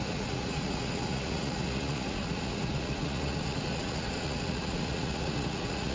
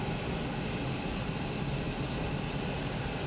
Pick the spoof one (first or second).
first